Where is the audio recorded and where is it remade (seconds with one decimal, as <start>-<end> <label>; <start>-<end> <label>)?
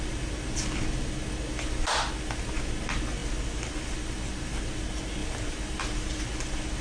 0.0-5.2 recorded; 5.2-6.0 remade; 6.0-6.8 recorded